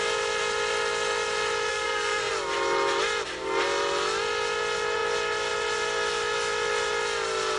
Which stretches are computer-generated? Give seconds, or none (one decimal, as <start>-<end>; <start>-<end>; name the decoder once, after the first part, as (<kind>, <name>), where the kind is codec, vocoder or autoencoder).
1.7-2.3 (codec, SNAC)